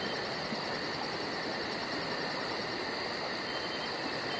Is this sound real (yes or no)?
yes